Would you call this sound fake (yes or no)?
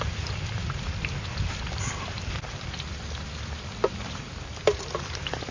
yes